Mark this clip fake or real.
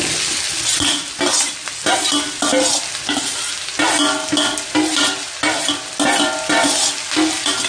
real